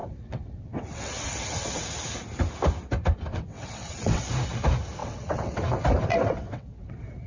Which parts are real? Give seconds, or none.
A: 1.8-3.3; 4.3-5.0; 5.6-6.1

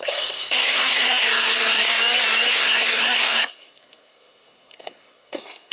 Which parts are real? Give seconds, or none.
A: 1.9-2.5

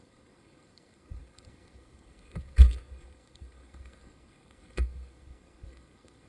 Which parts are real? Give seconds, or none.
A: none

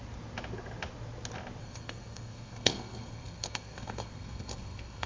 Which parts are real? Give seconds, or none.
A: 0.0-1.6

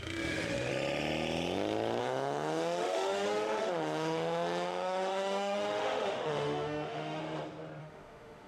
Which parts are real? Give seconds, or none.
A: 0.7-2.0; 7.2-7.8

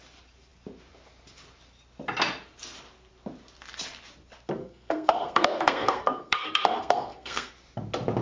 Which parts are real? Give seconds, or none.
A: 0.0-4.6; 7.5-8.2

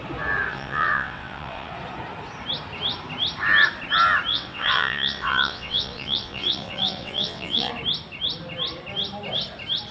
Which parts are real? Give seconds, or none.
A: 0.0-0.5; 1.7-4.3; 7.7-9.9